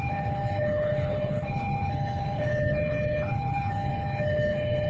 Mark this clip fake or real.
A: fake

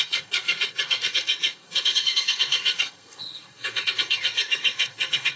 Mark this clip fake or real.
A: fake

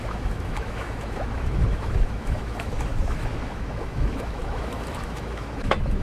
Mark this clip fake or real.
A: fake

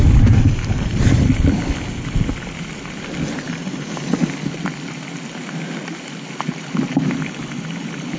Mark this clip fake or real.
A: real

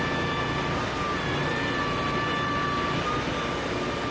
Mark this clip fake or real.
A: real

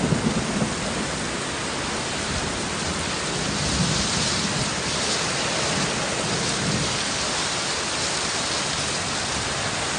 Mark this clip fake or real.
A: real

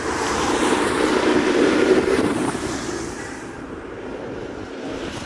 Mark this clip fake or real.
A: fake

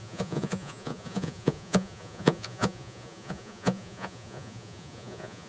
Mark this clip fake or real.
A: fake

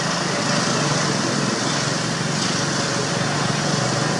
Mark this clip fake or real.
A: real